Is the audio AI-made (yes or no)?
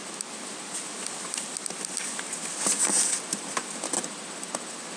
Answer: no